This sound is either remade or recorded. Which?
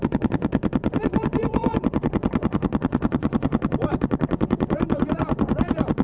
remade